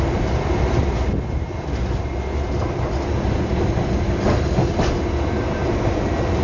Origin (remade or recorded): recorded